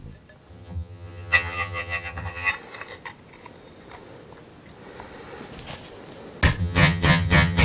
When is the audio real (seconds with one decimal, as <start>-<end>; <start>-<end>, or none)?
0.0-0.5; 2.5-6.6

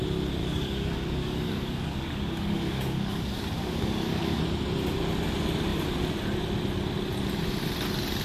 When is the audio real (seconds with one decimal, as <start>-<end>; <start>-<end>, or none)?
0.0-0.4; 4.4-8.2